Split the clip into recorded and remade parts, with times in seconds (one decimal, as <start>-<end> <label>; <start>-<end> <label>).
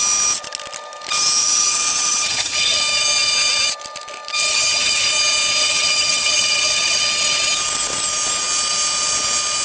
0.0-1.4 recorded; 1.4-2.8 remade; 2.8-4.5 recorded; 4.5-5.1 remade; 5.1-5.6 recorded; 5.6-7.0 remade; 7.0-9.6 recorded